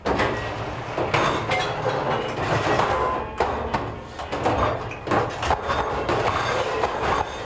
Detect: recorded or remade recorded